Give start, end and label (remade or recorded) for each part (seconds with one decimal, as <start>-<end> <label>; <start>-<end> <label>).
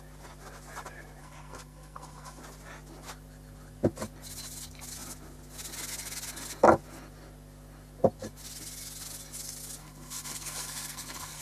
0.0-1.2 recorded; 1.2-2.4 remade; 2.4-9.8 recorded; 9.8-11.4 remade